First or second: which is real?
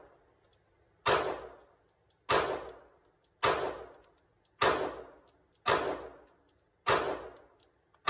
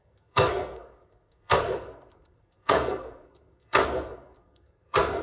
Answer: first